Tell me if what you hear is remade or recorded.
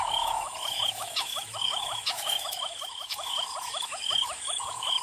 remade